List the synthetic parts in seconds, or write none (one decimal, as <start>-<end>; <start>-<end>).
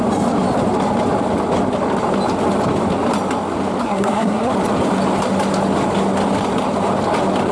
3.8-4.5